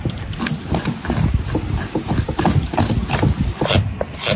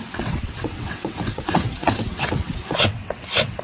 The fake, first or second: second